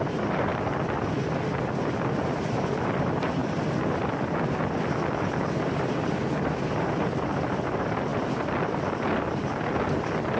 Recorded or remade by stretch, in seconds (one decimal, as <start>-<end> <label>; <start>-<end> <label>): 0.0-0.5 remade; 0.5-2.7 recorded; 2.7-3.4 remade; 3.4-6.8 recorded; 6.8-8.1 remade; 8.1-10.4 recorded